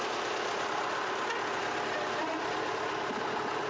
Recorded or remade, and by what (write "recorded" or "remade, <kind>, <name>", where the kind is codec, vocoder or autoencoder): recorded